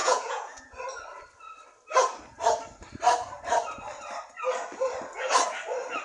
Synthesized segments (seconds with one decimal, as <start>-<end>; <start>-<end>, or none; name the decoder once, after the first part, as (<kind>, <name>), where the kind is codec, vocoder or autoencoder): 0.0-0.7 (vocoder, Vocos)